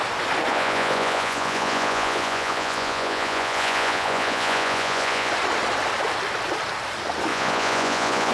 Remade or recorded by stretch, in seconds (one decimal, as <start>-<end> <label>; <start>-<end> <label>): 0.0-0.5 recorded; 0.5-5.3 remade; 5.3-7.3 recorded; 7.3-8.3 remade

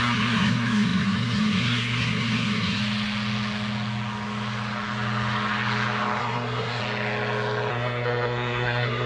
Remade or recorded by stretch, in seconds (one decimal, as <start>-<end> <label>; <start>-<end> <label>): 0.0-2.8 remade; 2.8-6.2 recorded; 6.2-6.8 remade; 6.8-7.7 recorded; 7.7-9.1 remade